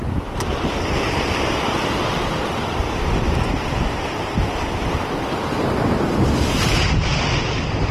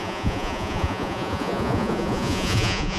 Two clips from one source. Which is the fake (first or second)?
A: second